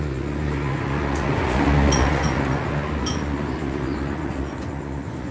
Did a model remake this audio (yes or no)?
yes